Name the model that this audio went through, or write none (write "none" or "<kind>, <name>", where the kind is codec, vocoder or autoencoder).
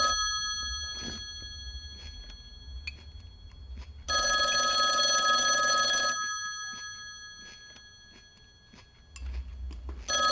none